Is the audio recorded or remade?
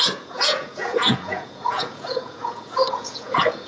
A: remade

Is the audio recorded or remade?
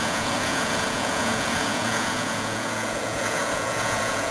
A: remade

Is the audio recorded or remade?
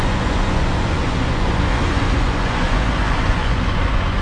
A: remade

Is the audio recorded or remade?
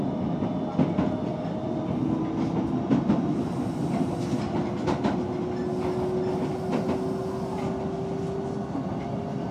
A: recorded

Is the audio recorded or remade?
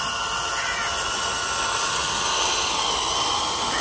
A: recorded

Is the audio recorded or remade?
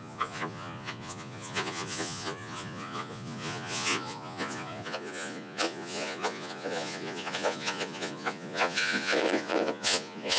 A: remade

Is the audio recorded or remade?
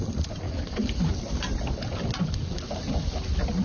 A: recorded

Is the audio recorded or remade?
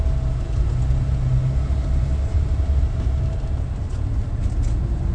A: recorded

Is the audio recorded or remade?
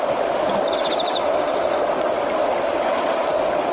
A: recorded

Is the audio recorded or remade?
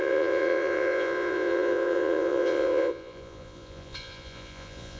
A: remade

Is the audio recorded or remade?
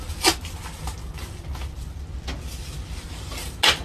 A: recorded